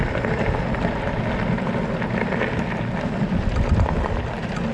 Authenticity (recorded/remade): recorded